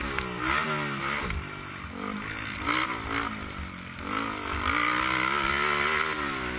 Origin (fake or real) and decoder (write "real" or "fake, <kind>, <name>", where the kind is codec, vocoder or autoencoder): real